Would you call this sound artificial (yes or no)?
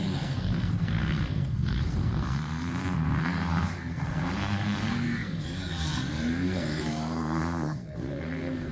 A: yes